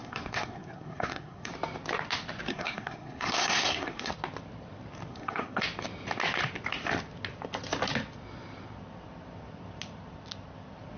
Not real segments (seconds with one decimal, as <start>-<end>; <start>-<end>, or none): 0.0-1.5; 2.5-4.1; 5.1-5.6